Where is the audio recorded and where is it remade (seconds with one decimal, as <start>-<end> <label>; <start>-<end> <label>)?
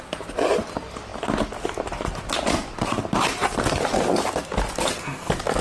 0.0-5.6 recorded